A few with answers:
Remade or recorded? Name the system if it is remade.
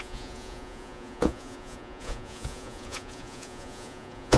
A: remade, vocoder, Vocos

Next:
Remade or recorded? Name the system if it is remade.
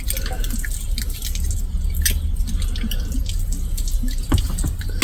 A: recorded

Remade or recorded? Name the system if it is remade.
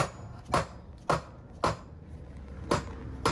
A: recorded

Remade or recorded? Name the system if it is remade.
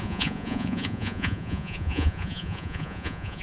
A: remade, vocoder, Vocos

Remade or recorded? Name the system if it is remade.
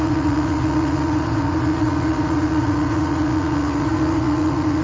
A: remade, vocoder, Vocos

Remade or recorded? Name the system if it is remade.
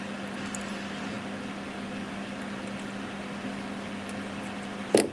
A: recorded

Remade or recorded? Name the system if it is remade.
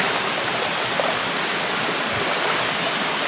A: recorded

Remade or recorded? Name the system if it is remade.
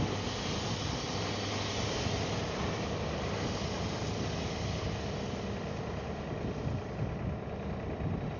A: recorded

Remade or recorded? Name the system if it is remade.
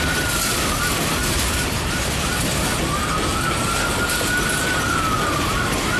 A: recorded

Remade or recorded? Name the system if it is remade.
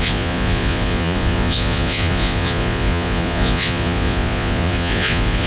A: remade, vocoder, Vocos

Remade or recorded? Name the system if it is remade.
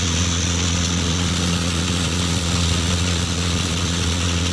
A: remade, vocoder, Vocos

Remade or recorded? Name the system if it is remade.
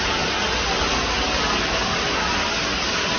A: recorded